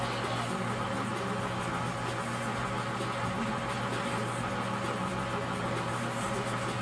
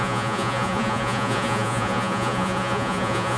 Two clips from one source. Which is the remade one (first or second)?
second